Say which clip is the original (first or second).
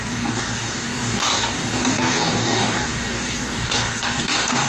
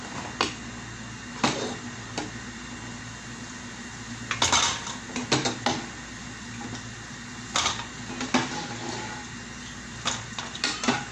second